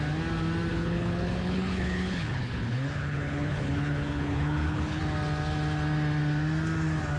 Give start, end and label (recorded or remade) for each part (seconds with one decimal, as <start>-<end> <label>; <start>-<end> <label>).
0.0-0.7 recorded; 0.7-5.0 remade; 5.0-7.2 recorded